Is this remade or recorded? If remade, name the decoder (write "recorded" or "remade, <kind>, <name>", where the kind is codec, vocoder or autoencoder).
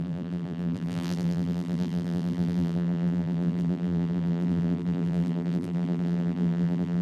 remade, vocoder, BigVGAN v2